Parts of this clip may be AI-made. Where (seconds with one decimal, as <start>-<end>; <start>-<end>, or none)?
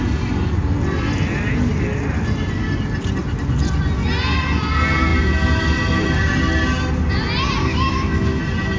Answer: 7.6-8.4